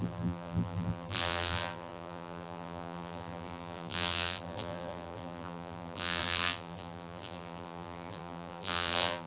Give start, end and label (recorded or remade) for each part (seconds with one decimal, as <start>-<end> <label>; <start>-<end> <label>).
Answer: 0.0-9.3 remade